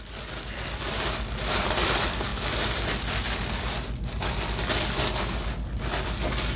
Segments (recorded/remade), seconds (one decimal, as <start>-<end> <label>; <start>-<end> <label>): 0.0-6.6 recorded

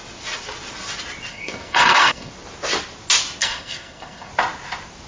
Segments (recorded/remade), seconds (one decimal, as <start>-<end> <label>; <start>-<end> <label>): 0.0-1.3 recorded; 1.3-2.3 remade; 2.3-3.4 recorded; 3.4-4.3 remade; 4.3-5.1 recorded

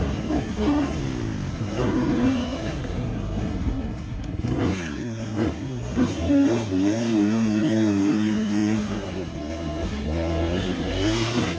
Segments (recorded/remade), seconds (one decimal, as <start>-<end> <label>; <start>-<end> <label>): 0.0-1.0 remade; 1.0-1.5 recorded; 1.5-11.6 remade